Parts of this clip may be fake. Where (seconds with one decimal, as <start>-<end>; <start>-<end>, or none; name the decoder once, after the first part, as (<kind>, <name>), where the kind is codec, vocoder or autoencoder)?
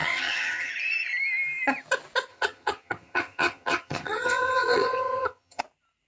0.0-0.7 (vocoder, HiFi-GAN); 2.3-5.6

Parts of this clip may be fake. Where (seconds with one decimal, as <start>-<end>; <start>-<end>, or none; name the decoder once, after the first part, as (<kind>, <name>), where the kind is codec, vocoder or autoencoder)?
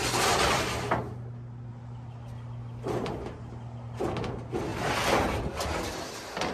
none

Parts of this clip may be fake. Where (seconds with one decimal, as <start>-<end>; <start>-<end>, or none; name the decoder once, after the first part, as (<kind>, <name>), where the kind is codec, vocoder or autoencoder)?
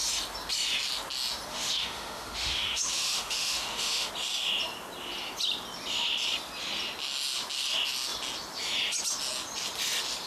1.5-4.1 (autoencoder, DAC-VAE)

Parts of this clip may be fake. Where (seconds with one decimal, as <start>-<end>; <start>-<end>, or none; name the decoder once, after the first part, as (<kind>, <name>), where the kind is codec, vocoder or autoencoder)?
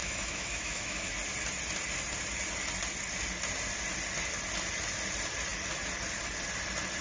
0.0-1.1 (autoencoder, DAC-VAE)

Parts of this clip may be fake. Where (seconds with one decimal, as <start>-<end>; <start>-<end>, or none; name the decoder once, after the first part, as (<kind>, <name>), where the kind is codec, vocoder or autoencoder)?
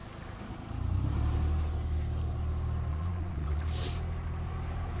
2.9-3.6 (vocoder, Vocos)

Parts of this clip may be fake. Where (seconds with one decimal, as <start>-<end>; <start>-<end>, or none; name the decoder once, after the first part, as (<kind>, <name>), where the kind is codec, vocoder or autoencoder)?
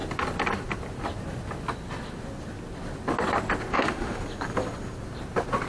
3.7-4.2 (autoencoder, DAC-VAE)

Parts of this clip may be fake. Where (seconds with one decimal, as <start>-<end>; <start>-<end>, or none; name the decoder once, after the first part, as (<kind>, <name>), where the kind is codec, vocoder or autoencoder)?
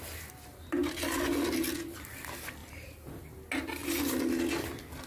2.6-3.2 (vocoder, BigVGAN v2)